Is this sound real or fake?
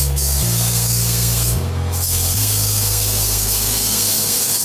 fake